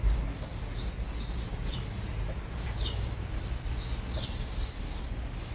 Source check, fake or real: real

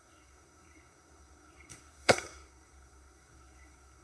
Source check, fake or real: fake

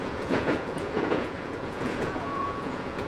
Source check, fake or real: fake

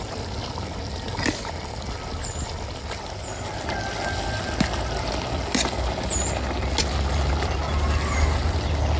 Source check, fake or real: real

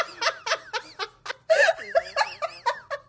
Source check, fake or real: real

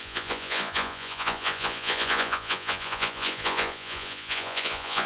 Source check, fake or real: fake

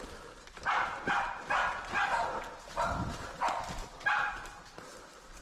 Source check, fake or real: fake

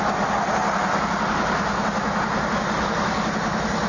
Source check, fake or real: real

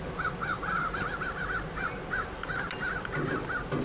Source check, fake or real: real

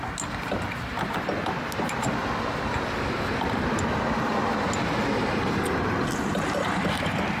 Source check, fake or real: real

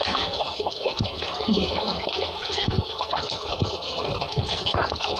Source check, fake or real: fake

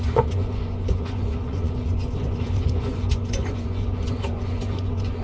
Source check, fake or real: fake